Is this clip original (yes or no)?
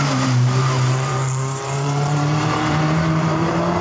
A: no